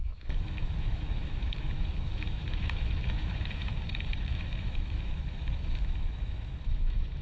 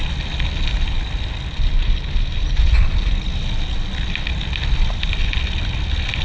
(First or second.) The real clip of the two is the second